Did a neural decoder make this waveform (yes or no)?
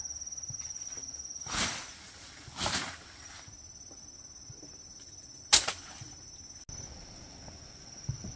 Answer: no